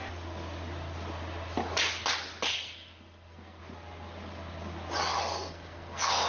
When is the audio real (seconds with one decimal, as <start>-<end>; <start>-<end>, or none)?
0.0-2.5; 3.6-5.3

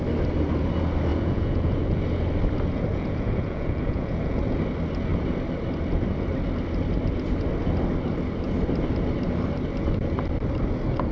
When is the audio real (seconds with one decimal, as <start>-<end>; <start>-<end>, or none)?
0.0-1.1; 2.0-2.9; 4.4-11.1

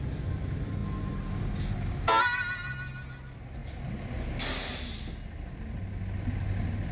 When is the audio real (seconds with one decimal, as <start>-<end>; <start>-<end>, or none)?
0.0-6.9

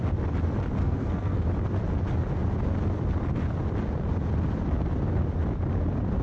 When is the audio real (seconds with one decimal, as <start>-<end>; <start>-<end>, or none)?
0.0-0.8; 1.4-6.2

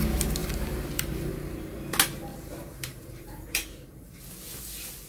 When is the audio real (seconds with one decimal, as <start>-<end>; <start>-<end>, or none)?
0.0-0.4; 1.3-2.3; 4.2-5.1

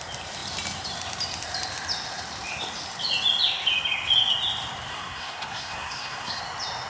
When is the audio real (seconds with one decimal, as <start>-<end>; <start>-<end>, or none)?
0.0-4.9; 6.4-6.9

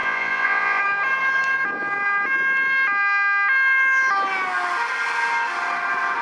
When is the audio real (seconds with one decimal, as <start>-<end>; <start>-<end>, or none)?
0.8-6.2